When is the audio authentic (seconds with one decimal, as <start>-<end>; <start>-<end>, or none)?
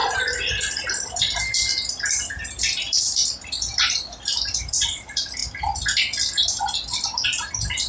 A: 5.4-6.5